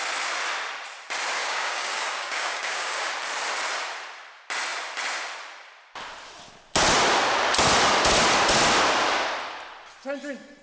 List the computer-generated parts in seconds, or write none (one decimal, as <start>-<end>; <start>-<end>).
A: 1.4-3.1